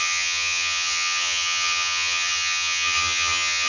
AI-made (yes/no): yes